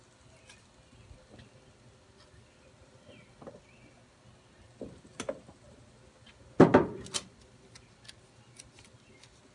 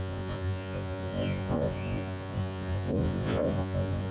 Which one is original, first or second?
first